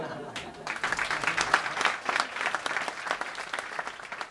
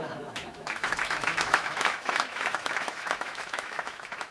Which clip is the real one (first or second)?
first